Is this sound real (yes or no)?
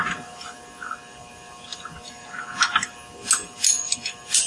yes